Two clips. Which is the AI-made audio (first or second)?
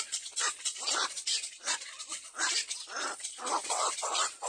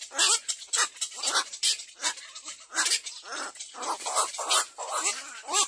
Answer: first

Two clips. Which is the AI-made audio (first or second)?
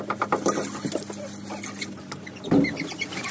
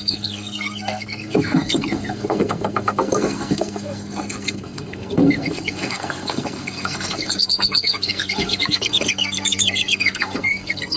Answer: second